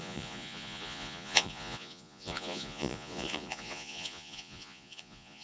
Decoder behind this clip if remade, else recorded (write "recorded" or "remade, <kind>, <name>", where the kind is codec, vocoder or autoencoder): remade, vocoder, Vocos